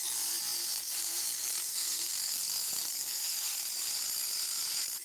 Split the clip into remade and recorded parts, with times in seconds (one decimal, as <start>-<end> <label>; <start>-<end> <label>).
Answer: 0.0-0.6 recorded; 0.6-3.6 remade; 3.6-5.0 recorded